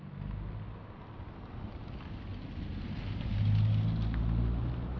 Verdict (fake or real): real